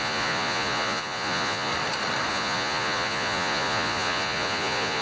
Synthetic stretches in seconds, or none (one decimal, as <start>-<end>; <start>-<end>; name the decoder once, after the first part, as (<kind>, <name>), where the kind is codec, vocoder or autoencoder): 0.0-1.7 (vocoder, Vocos); 2.3-5.0